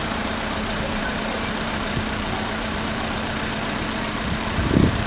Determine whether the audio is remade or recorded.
remade